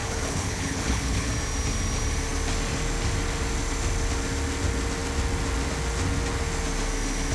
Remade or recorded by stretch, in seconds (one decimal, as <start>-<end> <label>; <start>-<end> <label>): 0.0-1.3 remade; 1.3-7.3 recorded